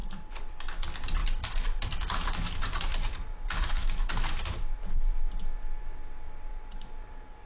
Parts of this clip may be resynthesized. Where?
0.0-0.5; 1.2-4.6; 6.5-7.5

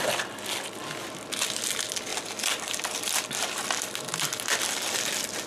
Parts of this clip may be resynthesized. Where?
2.1-5.5

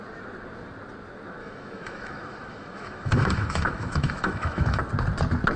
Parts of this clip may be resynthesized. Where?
1.4-4.8